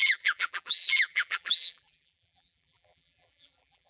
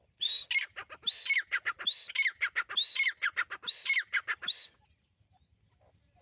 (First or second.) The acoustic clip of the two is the second